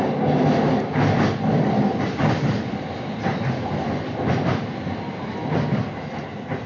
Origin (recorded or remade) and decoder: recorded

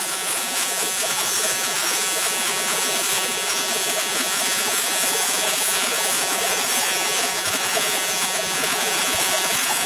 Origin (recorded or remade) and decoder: remade, vocoder, Vocos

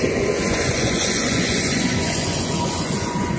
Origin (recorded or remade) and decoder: remade, vocoder, Vocos